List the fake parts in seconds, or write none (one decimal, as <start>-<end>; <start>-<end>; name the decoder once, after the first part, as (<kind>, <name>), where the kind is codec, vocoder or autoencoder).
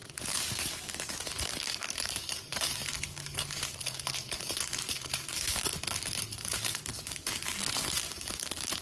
0.0-8.8 (codec, DAC)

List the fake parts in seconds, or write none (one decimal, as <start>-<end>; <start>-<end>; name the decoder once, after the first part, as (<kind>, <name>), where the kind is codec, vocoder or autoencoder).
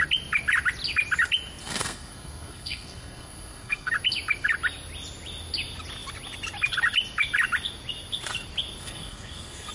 1.6-3.9 (codec, SNAC); 8.8-9.7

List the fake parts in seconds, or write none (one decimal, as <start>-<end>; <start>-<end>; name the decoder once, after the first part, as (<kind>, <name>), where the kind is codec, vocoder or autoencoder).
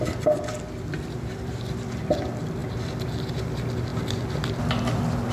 0.0-2.6 (vocoder, BigVGAN v2); 3.3-3.9; 4.5-5.3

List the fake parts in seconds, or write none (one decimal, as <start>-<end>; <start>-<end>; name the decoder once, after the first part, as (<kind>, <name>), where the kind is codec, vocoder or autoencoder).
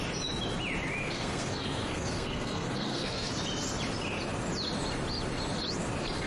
1.0-3.3 (codec, SNAC)